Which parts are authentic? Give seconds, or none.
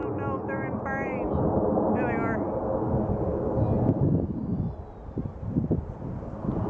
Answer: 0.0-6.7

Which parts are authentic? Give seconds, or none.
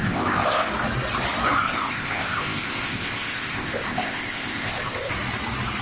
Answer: 0.7-1.6; 5.1-5.8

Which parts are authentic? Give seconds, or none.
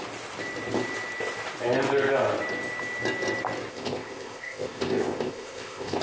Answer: 0.0-3.7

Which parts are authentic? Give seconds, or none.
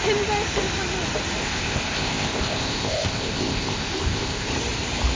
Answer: 0.0-1.4; 4.5-5.2